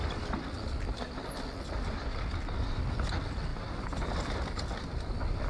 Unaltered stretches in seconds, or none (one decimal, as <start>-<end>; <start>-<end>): 0.0-5.5